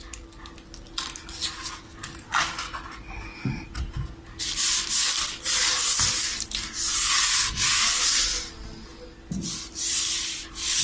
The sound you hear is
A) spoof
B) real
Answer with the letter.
B